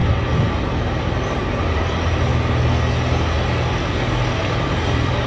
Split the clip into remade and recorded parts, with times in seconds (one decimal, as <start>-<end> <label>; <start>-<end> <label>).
0.0-1.0 recorded; 1.0-2.3 remade; 2.3-4.4 recorded; 4.4-5.3 remade